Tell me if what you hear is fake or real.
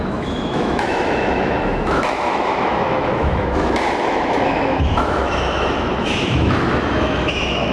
fake